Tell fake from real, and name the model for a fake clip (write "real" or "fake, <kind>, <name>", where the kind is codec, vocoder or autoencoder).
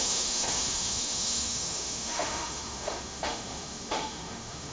fake, autoencoder, DAC-VAE